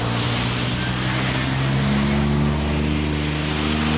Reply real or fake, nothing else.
real